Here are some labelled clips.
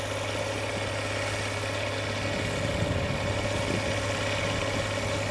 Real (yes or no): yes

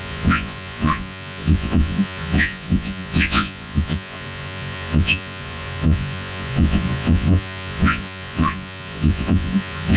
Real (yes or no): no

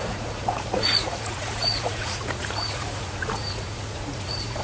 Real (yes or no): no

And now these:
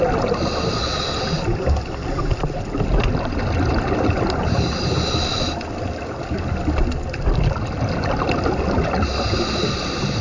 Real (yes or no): yes